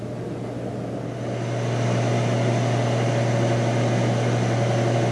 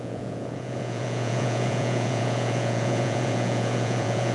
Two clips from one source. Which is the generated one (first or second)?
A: second